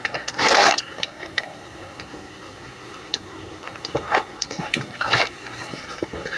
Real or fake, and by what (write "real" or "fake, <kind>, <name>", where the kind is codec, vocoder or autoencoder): fake, codec, SNAC